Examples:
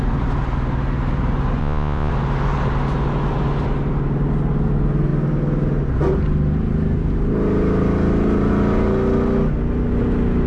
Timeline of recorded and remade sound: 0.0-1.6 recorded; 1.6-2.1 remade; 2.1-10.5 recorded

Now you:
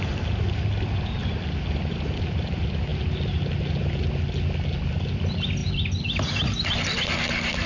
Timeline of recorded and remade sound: 0.0-7.7 recorded

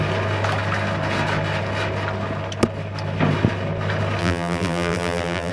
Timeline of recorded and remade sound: 0.0-4.2 recorded; 4.2-5.5 remade

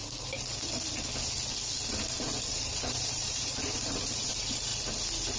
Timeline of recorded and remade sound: 0.0-2.4 recorded; 2.4-4.7 remade; 4.7-5.4 recorded